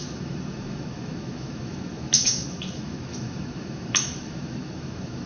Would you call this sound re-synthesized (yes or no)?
yes